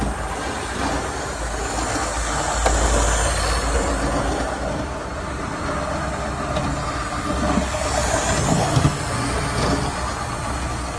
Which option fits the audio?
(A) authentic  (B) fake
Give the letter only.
A